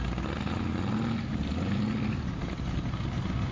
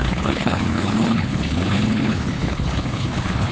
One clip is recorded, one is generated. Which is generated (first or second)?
second